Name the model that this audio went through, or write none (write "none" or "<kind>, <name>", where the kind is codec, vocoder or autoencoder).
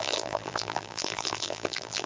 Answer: vocoder, BigVGAN v2